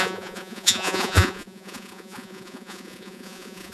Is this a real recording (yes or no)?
no